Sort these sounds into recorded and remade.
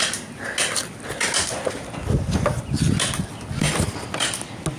recorded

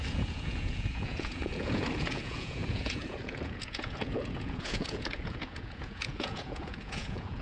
remade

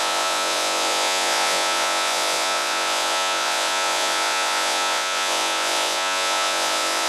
remade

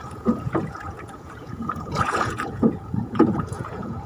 remade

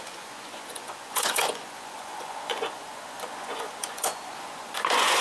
remade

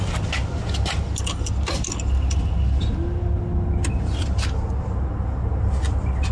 recorded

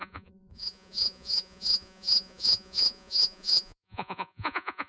remade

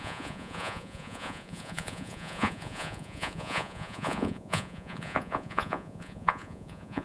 remade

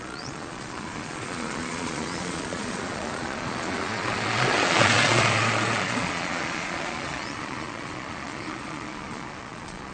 remade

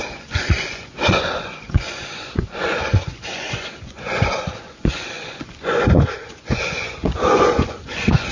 remade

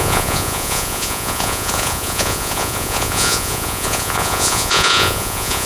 remade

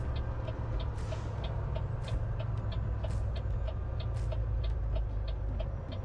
recorded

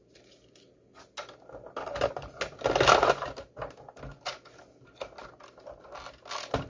recorded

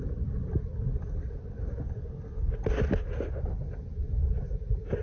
recorded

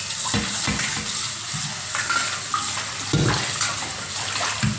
recorded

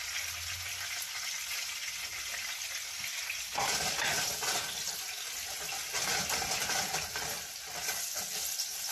recorded